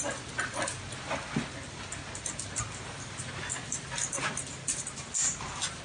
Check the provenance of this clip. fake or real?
real